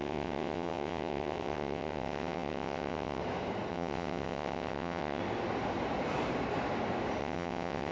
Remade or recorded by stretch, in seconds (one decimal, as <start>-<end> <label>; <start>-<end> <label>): 0.0-3.2 remade; 3.2-3.7 recorded; 3.7-5.2 remade; 5.2-7.2 recorded; 7.2-7.9 remade